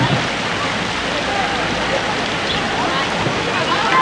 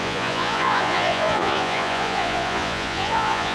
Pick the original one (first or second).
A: first